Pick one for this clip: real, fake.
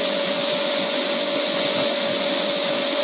fake